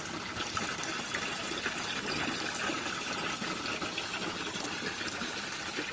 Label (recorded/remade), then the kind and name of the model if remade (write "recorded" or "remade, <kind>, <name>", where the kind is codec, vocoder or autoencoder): recorded